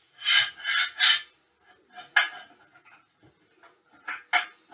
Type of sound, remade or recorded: recorded